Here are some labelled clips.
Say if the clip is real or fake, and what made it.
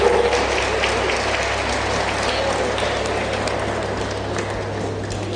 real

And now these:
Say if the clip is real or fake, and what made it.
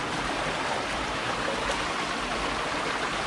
real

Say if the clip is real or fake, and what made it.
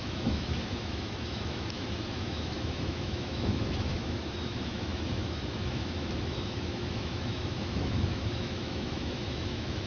fake, autoencoder, DAC-VAE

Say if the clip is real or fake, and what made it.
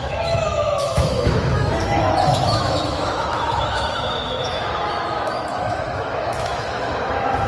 fake, autoencoder, DAC-VAE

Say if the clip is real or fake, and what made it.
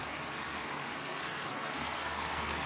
fake, codec, SNAC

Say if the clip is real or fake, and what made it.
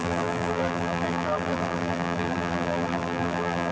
fake, vocoder, BigVGAN v2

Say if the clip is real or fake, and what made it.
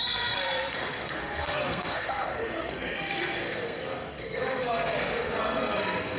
fake, codec, SNAC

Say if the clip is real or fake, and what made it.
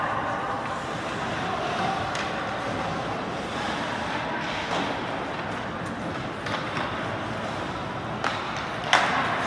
real